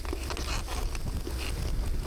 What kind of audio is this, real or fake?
real